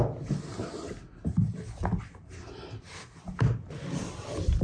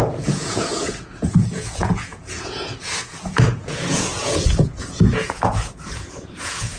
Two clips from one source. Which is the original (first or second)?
first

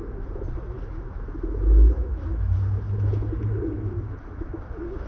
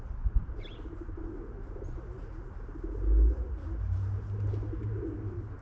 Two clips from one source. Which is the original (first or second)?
second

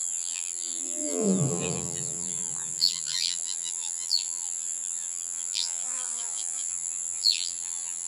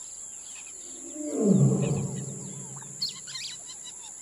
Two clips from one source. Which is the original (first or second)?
second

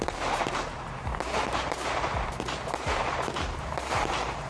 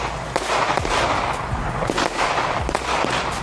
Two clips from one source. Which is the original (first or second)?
second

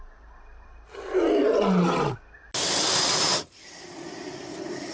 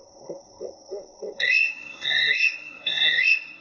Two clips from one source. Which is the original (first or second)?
first